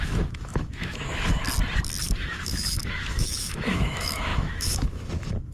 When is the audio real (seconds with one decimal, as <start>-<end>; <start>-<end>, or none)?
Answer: 1.4-2.0